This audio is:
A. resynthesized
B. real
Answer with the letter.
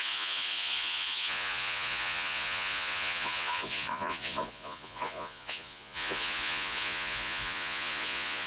A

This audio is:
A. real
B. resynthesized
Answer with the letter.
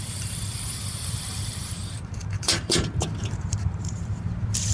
B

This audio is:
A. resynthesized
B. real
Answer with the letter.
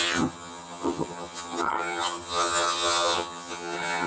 A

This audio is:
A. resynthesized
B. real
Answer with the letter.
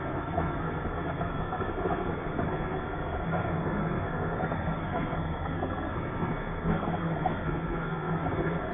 A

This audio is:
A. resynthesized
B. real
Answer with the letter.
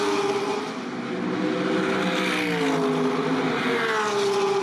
B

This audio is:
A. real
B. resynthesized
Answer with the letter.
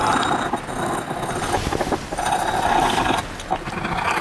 A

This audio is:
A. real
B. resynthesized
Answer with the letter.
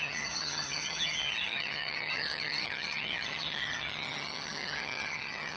B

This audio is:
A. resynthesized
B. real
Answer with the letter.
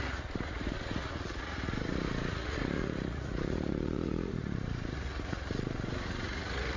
A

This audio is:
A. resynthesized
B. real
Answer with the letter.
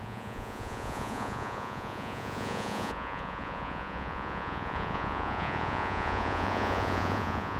A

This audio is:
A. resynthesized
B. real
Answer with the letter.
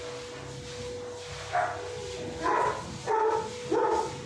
B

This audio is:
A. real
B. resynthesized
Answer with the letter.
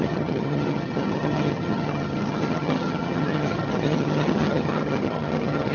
B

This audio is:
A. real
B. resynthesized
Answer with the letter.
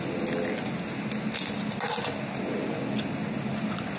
A